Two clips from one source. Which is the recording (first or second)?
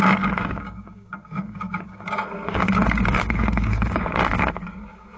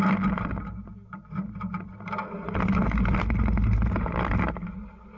second